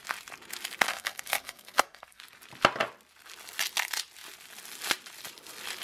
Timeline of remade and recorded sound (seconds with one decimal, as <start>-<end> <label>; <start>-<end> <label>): 0.0-0.9 recorded; 0.9-2.2 remade; 2.2-5.8 recorded